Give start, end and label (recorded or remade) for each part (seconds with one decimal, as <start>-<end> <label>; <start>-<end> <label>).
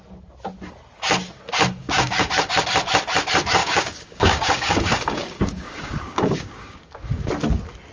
0.0-1.8 recorded; 1.8-2.3 remade; 2.3-3.6 recorded; 3.6-7.3 remade; 7.3-7.9 recorded